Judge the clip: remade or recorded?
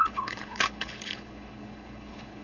remade